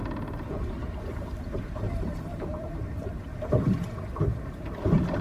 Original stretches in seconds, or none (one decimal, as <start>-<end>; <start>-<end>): 0.0-1.1; 3.5-5.2